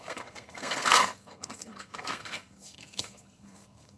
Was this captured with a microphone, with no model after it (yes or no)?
no